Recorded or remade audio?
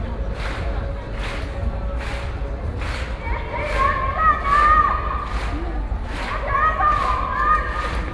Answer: recorded